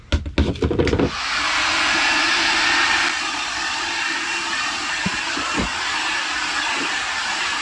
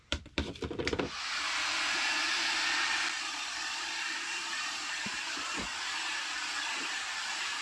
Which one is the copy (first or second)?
second